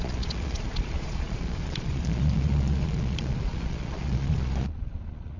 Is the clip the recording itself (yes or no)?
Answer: no